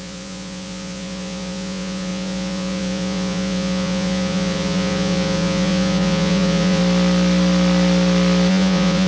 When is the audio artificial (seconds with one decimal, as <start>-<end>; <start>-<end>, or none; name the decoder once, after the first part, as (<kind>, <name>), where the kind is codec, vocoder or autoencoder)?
0.0-6.8 (vocoder, Vocos); 8.5-9.1